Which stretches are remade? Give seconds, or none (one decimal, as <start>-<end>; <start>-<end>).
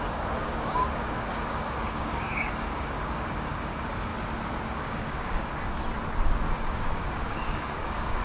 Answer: 0.0-4.1; 4.7-5.6; 6.5-8.2